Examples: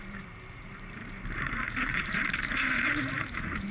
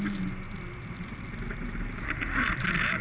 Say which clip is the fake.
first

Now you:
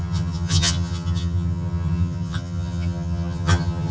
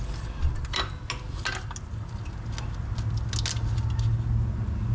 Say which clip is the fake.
first